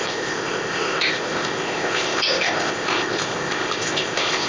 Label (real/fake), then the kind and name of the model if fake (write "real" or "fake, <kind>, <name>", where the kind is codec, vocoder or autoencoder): fake, codec, ZipCodec